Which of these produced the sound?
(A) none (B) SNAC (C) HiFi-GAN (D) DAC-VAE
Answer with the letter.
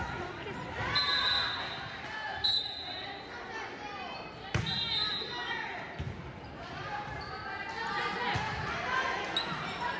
A